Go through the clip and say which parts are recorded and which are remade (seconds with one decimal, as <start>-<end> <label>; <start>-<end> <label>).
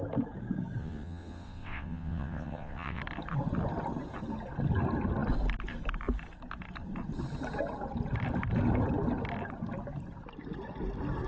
0.0-0.8 recorded; 0.8-3.0 remade; 3.0-11.3 recorded